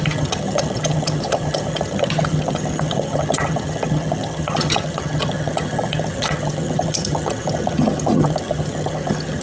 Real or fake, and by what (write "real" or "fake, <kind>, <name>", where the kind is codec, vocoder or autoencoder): fake, vocoder, HiFi-GAN